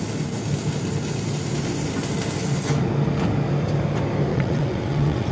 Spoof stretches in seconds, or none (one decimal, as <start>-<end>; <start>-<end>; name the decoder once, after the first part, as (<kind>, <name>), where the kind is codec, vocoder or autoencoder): 4.3-5.3 (vocoder, WaveNeXt)